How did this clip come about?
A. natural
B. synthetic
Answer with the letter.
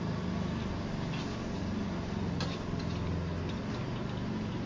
A